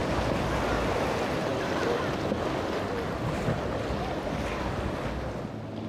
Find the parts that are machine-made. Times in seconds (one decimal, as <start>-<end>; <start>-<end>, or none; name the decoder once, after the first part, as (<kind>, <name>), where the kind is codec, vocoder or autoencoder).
none